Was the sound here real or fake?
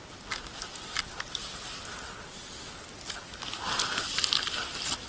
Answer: real